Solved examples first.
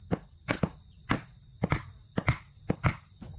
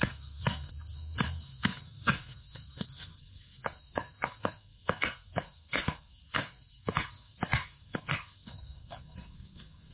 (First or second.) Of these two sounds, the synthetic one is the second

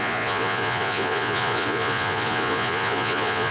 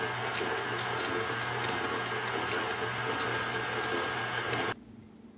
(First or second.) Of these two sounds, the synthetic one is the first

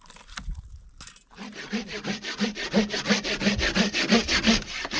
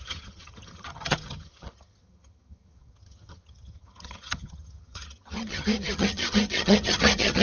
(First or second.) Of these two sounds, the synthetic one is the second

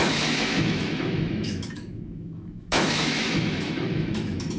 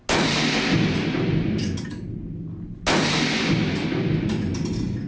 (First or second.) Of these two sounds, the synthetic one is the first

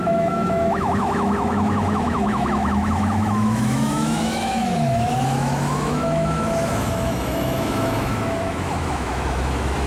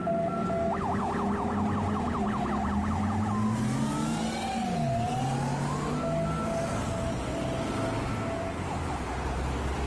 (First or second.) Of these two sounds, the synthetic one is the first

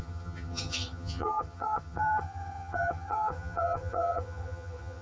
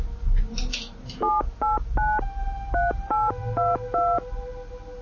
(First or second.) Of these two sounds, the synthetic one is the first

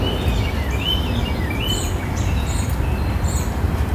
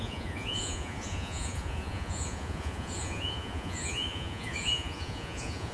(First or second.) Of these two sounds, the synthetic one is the second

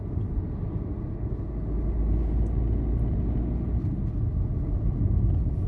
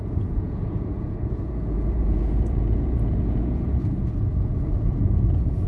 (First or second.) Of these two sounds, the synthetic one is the second